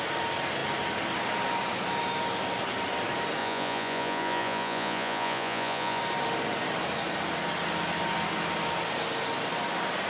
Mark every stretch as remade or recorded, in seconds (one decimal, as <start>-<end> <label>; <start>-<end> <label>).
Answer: 0.0-3.4 recorded; 3.4-6.0 remade; 6.0-10.1 recorded